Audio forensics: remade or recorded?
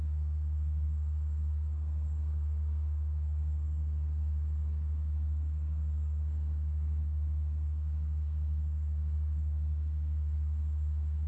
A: remade